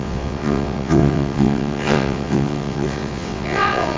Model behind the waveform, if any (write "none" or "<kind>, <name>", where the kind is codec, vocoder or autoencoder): vocoder, WaveNeXt